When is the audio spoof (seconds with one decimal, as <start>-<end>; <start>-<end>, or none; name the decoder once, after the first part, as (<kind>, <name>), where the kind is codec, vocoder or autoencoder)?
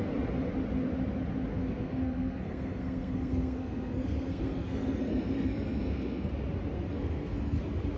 1.5-6.3 (codec, SNAC); 6.9-7.6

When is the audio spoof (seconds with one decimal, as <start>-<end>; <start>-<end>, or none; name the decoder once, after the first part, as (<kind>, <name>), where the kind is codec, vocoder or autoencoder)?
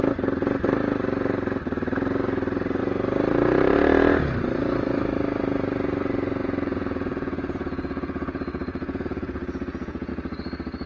6.4-10.1 (vocoder, Vocos)